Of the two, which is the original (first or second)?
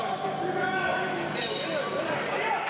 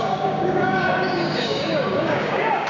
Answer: first